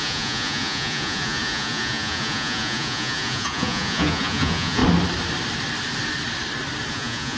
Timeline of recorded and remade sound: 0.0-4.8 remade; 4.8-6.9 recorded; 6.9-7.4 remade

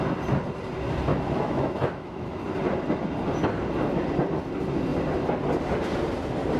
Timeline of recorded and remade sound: 0.0-1.1 recorded; 1.1-2.4 remade; 2.4-6.6 recorded

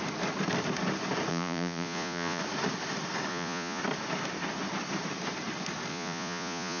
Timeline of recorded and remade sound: 0.0-1.3 recorded; 1.3-2.4 remade; 2.4-3.3 recorded; 3.3-3.8 remade; 3.8-5.9 recorded; 5.9-6.8 remade

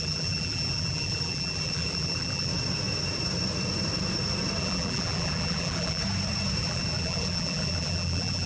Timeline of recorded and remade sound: 0.0-2.5 remade; 2.5-4.6 recorded; 4.6-6.0 remade; 6.0-6.6 recorded; 6.6-8.5 remade